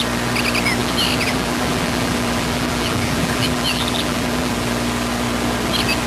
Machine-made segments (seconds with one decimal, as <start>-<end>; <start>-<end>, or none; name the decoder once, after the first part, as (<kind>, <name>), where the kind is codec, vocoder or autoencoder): 0.8-4.5 (vocoder, BigVGAN v2)